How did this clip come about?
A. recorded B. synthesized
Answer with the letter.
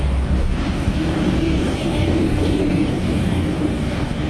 B